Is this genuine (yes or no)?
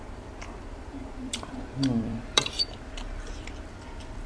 no